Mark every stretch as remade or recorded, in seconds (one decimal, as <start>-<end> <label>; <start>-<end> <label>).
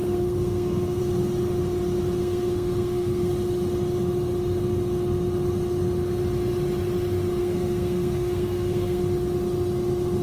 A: 0.0-1.0 remade; 1.0-2.2 recorded; 2.2-3.3 remade; 3.3-7.4 recorded; 7.4-9.0 remade; 9.0-10.2 recorded